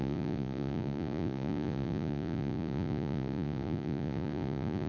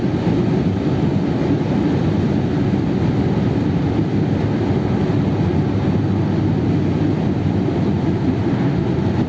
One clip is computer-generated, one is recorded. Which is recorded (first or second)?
second